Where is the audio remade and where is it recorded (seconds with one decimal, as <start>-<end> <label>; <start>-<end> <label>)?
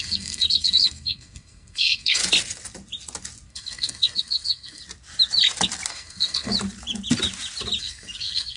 0.0-2.2 remade; 2.2-3.5 recorded; 3.5-4.8 remade; 4.8-5.9 recorded; 5.9-6.5 remade; 6.5-7.8 recorded; 7.8-8.6 remade